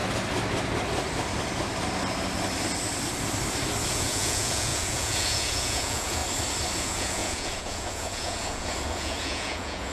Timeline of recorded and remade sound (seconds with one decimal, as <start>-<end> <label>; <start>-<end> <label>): 0.0-3.9 recorded; 3.9-6.2 remade; 6.2-6.8 recorded; 6.8-9.9 remade